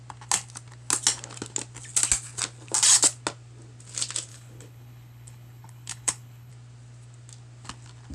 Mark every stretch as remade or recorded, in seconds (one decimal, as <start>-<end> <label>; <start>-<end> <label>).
0.0-4.3 recorded; 4.3-6.5 remade; 6.5-8.1 recorded